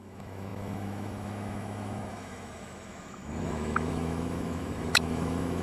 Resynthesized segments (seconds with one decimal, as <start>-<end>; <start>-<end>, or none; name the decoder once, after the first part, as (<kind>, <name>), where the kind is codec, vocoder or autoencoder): 0.0-5.6 (autoencoder, DAC-VAE)

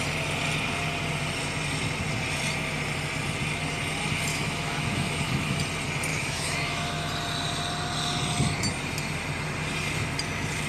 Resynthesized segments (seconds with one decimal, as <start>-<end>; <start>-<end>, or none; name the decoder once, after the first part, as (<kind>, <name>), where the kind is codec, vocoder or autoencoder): 4.3-5.6 (autoencoder, DAC-VAE); 6.1-7.1

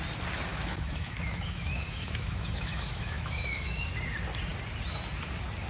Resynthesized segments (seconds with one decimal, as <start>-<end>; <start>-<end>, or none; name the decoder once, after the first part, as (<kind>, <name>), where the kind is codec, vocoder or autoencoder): 0.5-3.9 (autoencoder, DAC-VAE)

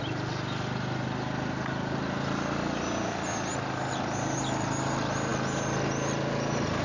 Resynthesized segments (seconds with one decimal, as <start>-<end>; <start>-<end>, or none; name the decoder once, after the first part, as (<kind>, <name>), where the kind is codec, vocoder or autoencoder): none